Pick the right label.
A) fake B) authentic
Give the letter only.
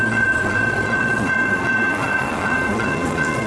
A